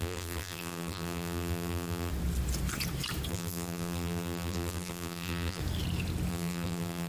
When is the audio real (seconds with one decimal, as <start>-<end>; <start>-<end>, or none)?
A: 2.1-3.3; 5.6-6.3